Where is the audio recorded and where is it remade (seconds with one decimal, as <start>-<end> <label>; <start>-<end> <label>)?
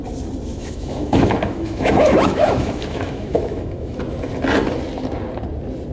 0.0-0.5 recorded; 0.5-4.0 remade; 4.0-5.9 recorded